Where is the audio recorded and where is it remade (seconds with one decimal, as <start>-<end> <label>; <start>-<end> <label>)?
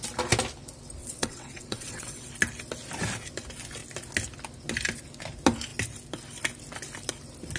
0.0-1.0 recorded; 1.0-2.3 remade; 2.3-7.6 recorded